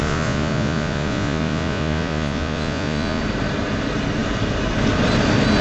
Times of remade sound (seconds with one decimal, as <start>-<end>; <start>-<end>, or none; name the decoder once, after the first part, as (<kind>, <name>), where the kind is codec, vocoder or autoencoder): 0.0-3.2 (vocoder, Vocos)